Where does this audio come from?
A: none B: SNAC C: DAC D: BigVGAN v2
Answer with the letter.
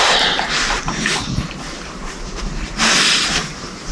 D